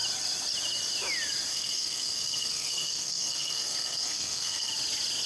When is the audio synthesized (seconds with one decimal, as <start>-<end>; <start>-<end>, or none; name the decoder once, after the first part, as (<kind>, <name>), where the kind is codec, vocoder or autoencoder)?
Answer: 1.5-4.7 (codec, SNAC)

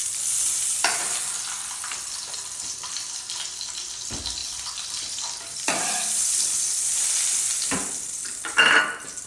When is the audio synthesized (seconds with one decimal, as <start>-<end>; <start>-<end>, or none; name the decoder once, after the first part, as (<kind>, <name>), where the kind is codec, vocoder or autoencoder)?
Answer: 0.0-1.2 (vocoder, BigVGAN v2); 4.4-8.8

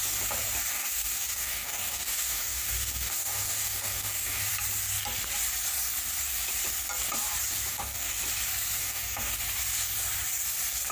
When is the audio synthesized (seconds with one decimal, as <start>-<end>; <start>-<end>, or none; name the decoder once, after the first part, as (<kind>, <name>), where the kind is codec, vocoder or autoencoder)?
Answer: 0.7-4.5 (codec, DAC); 7.7-8.2; 8.8-9.4